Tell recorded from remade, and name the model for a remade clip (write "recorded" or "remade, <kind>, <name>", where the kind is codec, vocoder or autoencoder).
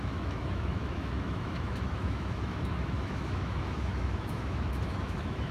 remade, autoencoder, DAC-VAE